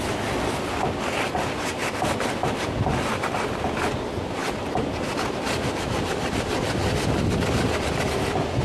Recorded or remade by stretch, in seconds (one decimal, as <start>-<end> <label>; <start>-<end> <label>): 0.0-8.6 remade